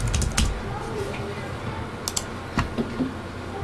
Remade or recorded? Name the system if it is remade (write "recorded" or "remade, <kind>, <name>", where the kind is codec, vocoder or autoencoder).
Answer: recorded